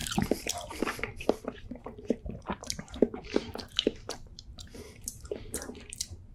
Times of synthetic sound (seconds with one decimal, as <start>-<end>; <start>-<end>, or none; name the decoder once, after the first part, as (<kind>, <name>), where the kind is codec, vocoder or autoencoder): 0.0-6.3 (vocoder, BigVGAN v2)